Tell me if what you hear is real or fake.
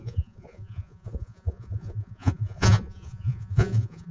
fake